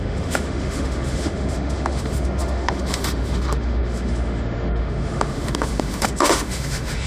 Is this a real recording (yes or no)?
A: no